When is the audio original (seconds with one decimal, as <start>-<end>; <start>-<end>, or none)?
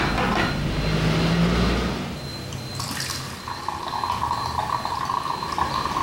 0.0-2.3